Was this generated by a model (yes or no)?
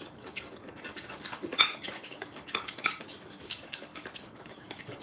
yes